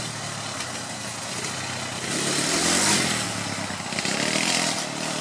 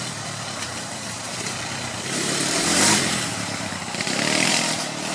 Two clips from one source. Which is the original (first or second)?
first